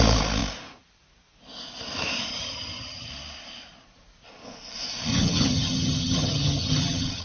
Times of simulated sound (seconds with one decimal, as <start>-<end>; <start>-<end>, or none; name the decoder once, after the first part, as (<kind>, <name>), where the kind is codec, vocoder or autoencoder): 2.3-3.1 (vocoder, HiFi-GAN); 5.1-7.2